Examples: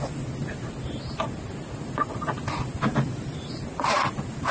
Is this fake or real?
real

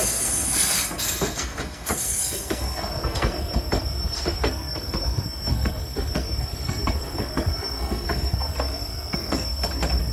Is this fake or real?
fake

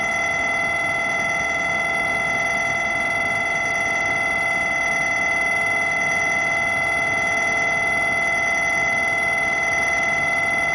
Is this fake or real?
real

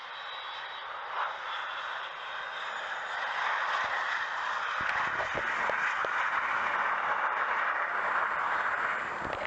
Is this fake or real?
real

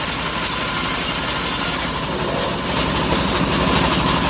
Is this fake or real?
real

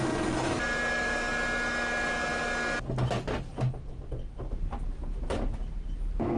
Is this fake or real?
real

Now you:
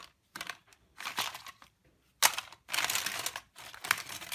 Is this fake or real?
real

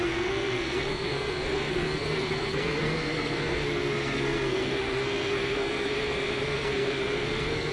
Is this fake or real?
fake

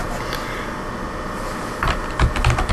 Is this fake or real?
real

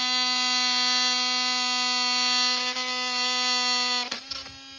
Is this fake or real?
real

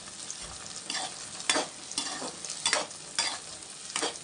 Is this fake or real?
real